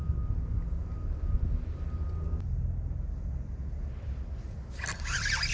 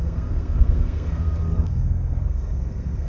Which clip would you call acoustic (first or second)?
first